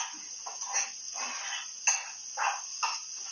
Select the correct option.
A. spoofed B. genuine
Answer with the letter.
B